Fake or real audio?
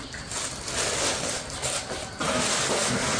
real